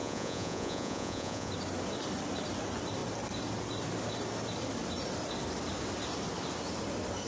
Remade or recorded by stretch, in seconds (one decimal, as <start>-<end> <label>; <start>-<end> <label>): 0.0-1.5 remade; 1.5-7.3 recorded